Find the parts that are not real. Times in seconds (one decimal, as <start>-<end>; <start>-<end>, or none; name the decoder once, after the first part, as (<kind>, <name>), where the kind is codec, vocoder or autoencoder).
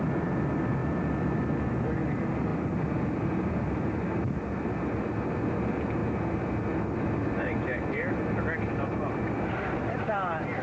none